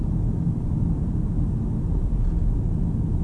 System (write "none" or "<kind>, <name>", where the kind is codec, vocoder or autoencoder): none